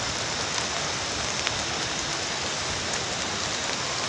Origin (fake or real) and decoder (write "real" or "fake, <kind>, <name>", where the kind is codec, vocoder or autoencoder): real